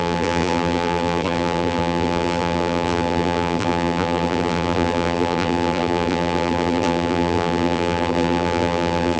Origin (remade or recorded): remade